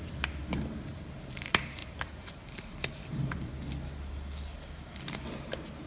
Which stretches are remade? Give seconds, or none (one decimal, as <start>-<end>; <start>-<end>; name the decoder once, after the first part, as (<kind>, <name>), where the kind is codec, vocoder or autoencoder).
1.8-3.5 (vocoder, BigVGAN v2)